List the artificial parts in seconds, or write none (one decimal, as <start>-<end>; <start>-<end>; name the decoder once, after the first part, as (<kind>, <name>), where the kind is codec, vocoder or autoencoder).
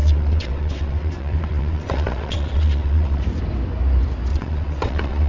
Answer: 0.0-3.2 (vocoder, WaveNeXt); 4.3-5.3